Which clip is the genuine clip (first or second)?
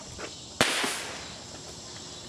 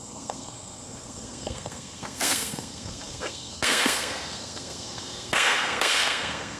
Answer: first